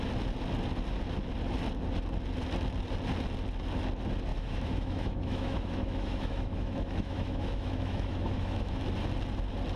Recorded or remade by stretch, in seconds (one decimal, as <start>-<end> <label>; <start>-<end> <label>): 0.0-4.3 recorded; 4.3-8.8 remade; 8.8-9.8 recorded

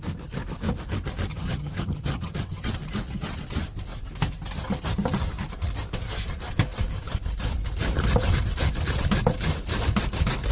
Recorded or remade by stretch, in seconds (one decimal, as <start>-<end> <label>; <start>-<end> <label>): 0.0-1.3 recorded; 1.3-2.7 remade; 2.7-10.5 recorded